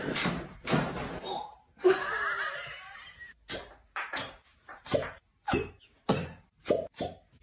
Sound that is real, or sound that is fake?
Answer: fake